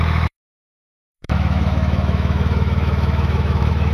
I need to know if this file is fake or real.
fake